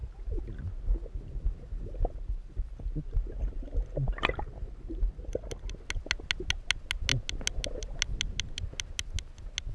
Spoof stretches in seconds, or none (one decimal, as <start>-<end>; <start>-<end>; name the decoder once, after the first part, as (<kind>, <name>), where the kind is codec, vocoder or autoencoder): none